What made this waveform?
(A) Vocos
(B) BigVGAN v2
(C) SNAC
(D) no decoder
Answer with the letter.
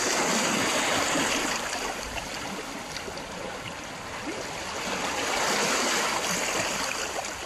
D